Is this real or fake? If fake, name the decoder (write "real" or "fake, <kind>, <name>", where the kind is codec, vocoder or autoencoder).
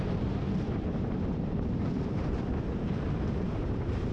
fake, vocoder, BigVGAN v2